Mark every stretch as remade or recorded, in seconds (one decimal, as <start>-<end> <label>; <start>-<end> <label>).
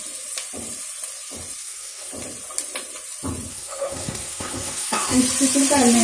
0.0-1.6 recorded; 1.6-2.1 remade; 2.1-3.5 recorded; 3.5-5.2 remade; 5.2-6.0 recorded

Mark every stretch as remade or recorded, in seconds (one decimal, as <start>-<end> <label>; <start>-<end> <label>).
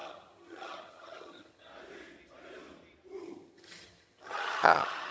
0.0-1.7 remade; 1.7-3.2 recorded; 3.2-5.1 remade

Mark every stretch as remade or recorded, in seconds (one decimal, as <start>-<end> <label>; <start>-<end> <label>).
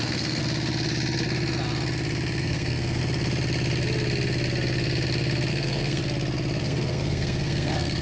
0.0-0.4 remade; 0.4-2.4 recorded; 2.4-3.0 remade; 3.0-5.5 recorded; 5.5-6.0 remade; 6.0-6.6 recorded; 6.6-8.0 remade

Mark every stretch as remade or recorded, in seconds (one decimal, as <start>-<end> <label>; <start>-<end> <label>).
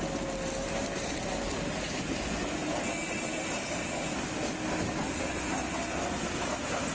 0.0-6.9 recorded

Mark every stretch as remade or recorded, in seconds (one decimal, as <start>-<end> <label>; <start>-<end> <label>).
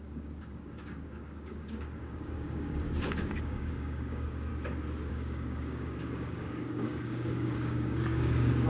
0.0-4.5 remade; 4.5-5.1 recorded; 5.1-8.7 remade